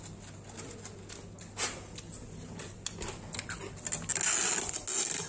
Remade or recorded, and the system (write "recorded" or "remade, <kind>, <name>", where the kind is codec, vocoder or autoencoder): recorded